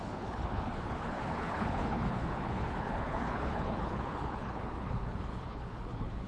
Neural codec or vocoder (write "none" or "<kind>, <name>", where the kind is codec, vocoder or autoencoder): codec, HILCodec